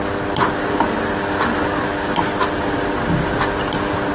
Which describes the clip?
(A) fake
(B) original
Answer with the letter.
B